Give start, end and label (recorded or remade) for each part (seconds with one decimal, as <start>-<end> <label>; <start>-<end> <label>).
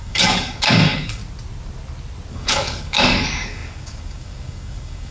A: 0.0-1.2 remade; 1.2-2.3 recorded; 2.3-5.1 remade